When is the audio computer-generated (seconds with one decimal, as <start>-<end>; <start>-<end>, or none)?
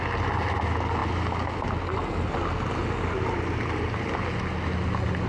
none